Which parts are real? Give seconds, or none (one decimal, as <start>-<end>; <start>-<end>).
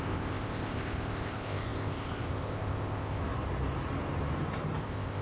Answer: 3.2-4.8